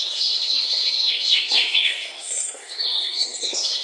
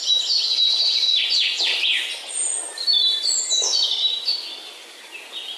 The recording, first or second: second